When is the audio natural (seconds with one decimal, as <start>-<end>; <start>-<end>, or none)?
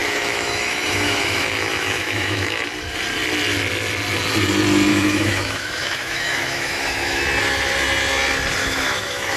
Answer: 2.6-4.9; 7.2-8.6